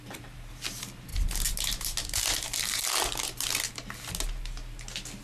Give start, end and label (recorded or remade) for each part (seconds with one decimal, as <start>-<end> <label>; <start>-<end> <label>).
0.0-5.2 recorded